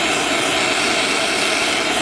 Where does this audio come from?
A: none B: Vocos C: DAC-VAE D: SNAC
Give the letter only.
A